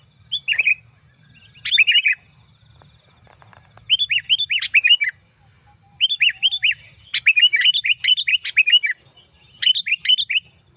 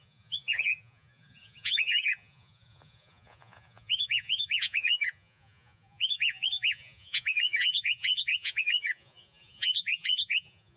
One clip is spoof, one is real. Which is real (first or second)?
first